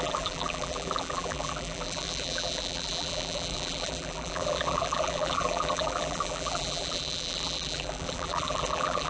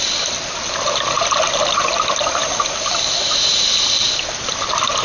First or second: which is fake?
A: first